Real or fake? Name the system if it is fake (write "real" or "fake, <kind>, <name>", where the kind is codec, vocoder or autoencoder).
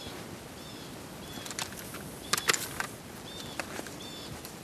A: real